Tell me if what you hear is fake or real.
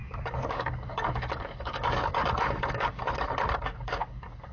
fake